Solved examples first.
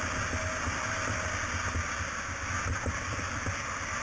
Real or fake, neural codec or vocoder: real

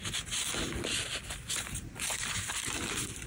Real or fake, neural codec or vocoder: real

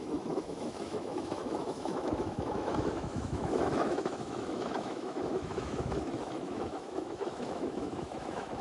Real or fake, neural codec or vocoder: fake, autoencoder, DAC-VAE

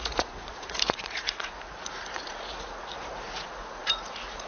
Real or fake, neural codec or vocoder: fake, vocoder, Vocos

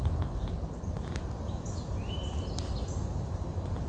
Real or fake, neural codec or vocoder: real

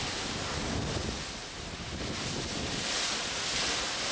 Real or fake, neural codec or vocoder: real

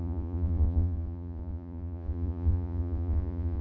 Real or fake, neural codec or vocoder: fake, vocoder, Vocos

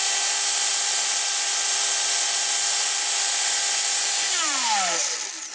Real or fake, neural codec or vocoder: real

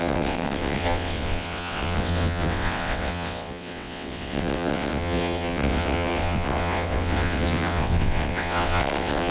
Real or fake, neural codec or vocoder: fake, vocoder, WaveNeXt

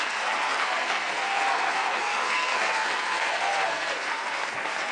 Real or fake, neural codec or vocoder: fake, codec, SNAC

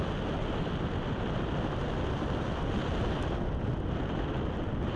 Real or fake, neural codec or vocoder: real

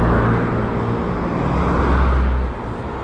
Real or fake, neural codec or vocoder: real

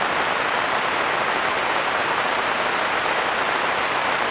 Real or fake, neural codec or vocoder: fake, vocoder, BigVGAN v2